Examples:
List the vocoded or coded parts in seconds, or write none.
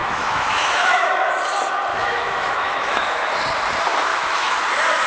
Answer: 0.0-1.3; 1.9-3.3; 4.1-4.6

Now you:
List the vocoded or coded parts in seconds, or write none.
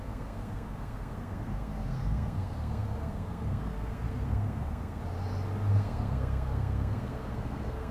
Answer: 0.0-5.0; 5.7-7.9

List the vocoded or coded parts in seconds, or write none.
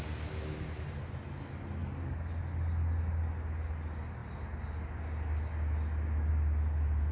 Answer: 1.8-2.4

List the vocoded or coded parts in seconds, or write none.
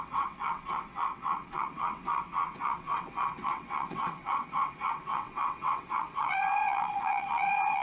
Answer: 0.0-7.8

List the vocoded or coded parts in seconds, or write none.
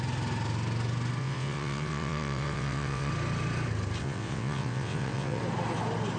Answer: 1.2-3.1; 4.0-5.4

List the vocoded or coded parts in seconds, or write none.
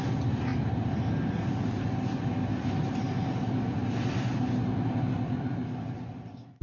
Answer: none